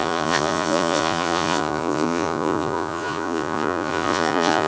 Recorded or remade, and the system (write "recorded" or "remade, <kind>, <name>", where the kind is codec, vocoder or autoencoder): remade, vocoder, Vocos